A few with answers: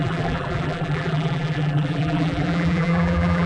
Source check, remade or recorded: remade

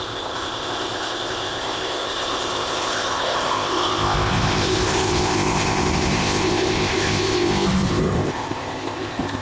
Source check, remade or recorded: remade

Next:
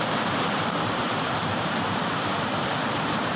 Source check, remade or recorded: remade